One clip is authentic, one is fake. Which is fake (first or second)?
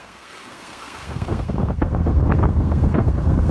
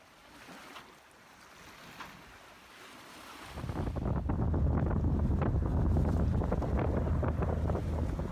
first